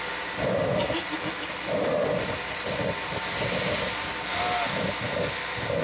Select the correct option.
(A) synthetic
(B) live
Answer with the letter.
B